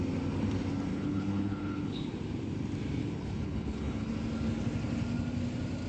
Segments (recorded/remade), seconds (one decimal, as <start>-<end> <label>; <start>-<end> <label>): 0.0-0.9 recorded; 0.9-2.1 remade; 2.1-3.0 recorded; 3.0-4.1 remade; 4.1-5.9 recorded